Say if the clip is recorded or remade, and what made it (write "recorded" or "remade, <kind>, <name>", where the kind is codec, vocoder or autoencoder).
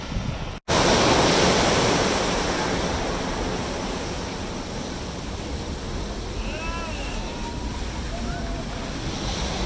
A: recorded